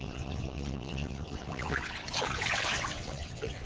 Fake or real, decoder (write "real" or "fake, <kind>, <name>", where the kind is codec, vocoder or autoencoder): fake, vocoder, WaveNeXt